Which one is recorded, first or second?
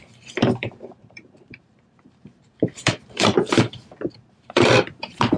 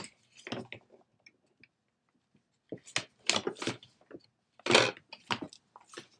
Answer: second